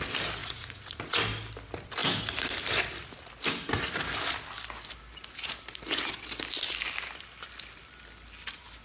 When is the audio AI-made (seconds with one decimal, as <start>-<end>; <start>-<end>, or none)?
0.4-1.2